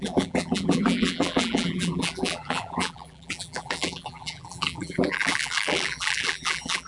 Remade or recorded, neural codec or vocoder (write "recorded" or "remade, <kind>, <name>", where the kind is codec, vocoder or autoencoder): remade, vocoder, BigVGAN v2